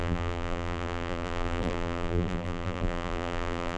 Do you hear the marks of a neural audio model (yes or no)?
yes